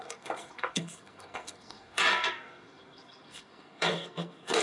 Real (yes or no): no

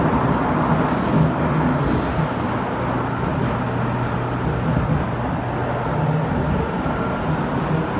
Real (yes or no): yes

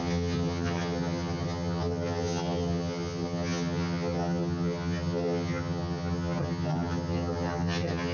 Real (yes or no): no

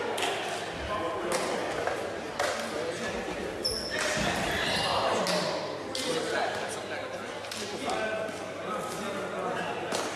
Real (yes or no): yes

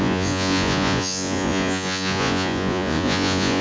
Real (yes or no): no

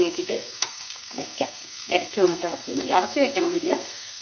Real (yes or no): no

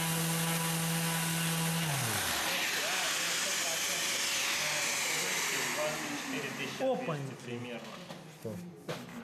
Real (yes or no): yes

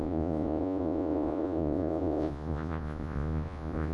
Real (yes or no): no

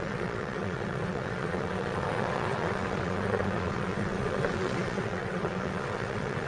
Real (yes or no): no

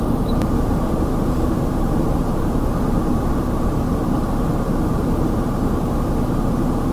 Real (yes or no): no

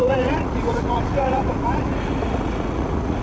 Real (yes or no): no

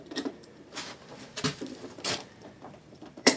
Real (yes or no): no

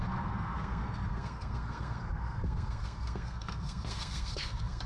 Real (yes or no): no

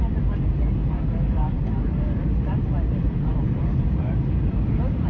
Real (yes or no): no